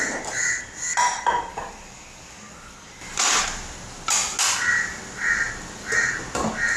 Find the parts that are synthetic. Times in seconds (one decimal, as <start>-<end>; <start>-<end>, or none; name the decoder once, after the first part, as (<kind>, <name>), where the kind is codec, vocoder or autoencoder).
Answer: 1.5-3.3 (codec, DAC)